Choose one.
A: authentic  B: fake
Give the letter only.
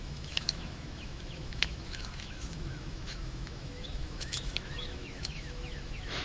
B